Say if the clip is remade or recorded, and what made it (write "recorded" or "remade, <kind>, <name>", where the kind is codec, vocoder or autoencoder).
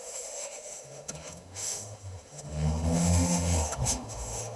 remade, autoencoder, DAC-VAE